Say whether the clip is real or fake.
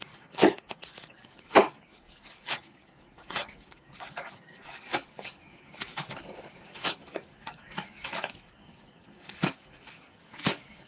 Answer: fake